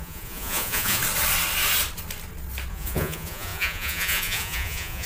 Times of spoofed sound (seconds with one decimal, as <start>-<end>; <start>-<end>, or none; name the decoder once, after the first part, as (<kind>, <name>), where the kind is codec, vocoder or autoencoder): 0.0-1.0 (vocoder, Vocos); 2.7-5.1